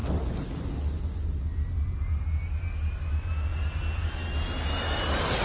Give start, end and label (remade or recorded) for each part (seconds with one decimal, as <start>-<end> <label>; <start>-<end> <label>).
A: 0.0-5.4 recorded